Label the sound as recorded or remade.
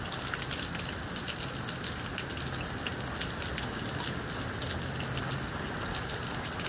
recorded